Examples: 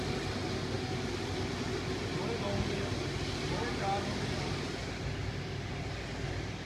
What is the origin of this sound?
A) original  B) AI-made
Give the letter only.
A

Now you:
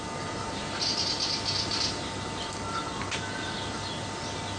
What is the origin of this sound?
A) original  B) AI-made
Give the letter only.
A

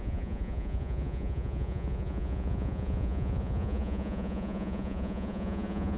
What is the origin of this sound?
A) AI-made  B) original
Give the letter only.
A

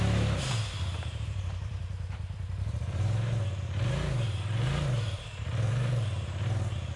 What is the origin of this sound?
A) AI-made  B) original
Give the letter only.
A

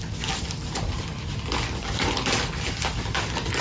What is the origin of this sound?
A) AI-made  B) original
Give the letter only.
B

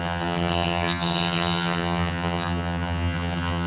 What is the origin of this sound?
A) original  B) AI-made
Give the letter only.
B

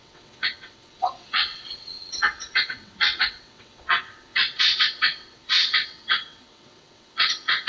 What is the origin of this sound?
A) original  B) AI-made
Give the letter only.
B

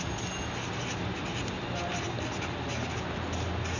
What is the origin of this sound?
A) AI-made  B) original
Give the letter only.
B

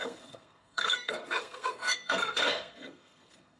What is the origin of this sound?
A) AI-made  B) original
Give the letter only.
A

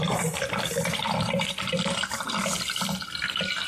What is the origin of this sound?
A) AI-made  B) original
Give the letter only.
A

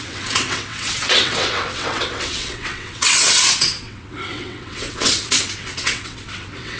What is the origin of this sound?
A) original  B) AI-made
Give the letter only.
B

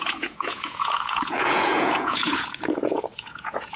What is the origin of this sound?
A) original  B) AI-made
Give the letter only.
B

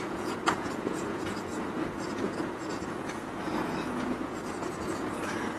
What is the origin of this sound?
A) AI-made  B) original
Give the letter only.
A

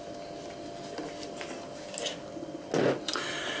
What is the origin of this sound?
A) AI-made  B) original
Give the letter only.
B